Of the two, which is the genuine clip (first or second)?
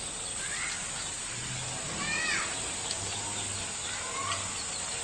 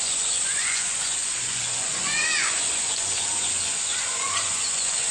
first